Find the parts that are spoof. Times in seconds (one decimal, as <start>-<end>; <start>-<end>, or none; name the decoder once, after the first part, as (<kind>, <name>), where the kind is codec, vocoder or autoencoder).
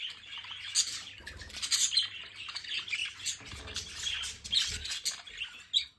none